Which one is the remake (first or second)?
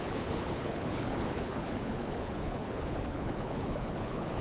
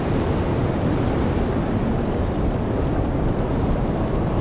first